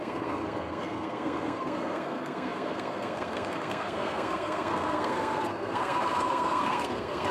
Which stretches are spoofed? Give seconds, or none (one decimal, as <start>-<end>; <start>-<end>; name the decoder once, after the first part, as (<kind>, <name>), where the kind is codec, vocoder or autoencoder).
0.0-7.3 (codec, SNAC)